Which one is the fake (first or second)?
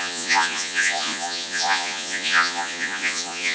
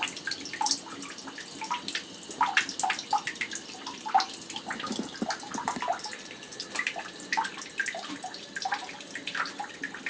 first